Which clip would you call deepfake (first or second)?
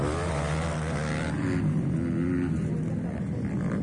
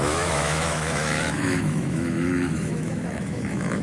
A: second